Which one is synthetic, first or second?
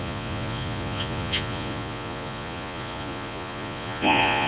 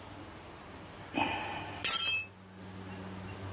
first